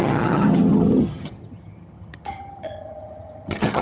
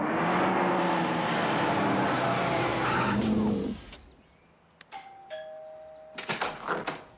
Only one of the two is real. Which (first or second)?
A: second